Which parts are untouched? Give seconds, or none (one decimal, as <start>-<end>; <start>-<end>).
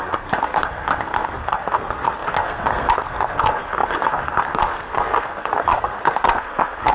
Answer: none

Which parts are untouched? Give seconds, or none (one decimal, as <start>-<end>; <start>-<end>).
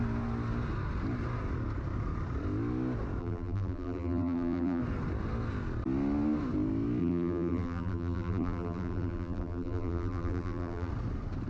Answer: 0.0-3.2; 4.8-7.0; 10.9-11.5